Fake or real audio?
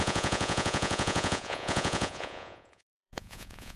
fake